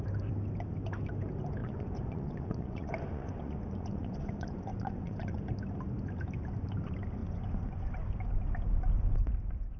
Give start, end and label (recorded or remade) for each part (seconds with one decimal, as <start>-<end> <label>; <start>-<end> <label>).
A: 0.0-1.6 recorded; 1.6-5.4 remade; 5.4-7.2 recorded; 7.2-7.9 remade; 7.9-9.8 recorded